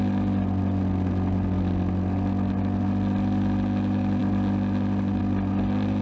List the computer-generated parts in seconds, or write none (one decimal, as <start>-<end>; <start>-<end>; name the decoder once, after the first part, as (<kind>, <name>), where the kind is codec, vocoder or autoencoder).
none